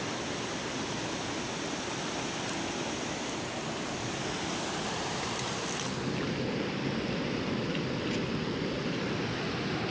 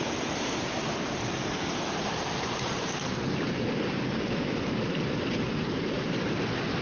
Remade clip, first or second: second